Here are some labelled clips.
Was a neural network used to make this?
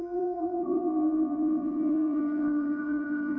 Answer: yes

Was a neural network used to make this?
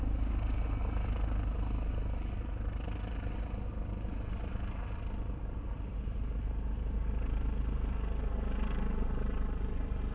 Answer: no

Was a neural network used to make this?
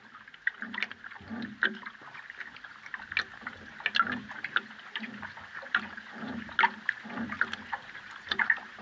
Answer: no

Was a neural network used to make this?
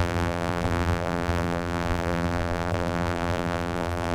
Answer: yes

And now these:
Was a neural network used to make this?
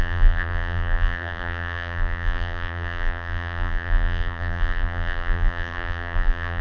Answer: yes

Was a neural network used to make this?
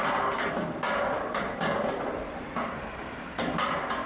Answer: yes